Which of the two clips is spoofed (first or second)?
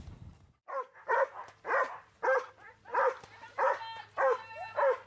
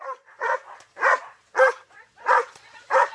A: second